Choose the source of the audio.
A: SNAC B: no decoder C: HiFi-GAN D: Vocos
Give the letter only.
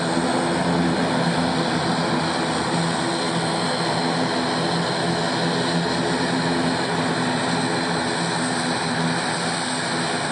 B